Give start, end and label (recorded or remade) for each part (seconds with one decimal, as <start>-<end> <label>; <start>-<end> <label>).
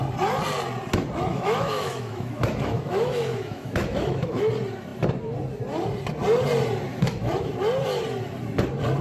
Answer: 0.0-1.3 recorded; 1.3-4.5 remade; 4.5-6.9 recorded; 6.9-7.5 remade; 7.5-9.0 recorded